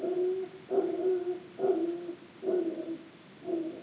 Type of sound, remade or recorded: recorded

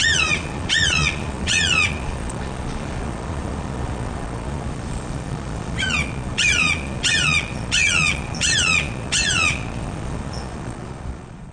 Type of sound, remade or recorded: remade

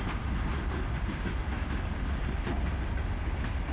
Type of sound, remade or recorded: recorded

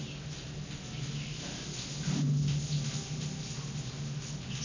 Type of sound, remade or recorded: recorded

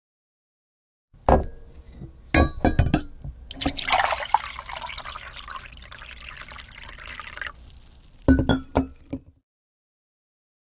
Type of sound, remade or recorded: recorded